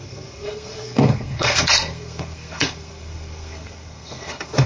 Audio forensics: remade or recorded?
remade